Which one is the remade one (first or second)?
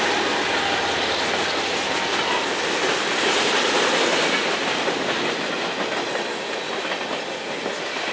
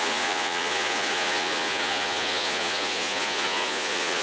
second